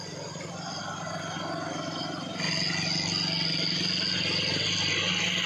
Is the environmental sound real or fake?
real